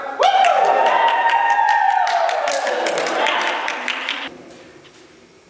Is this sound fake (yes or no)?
no